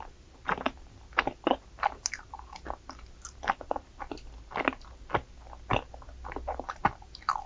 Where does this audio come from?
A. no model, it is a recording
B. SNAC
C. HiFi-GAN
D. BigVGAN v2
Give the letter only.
A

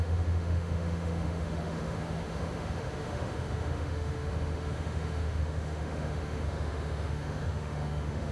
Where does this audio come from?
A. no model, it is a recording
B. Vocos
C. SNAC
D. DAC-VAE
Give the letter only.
D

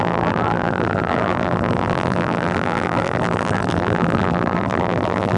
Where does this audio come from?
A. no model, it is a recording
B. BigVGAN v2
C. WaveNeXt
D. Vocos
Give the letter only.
B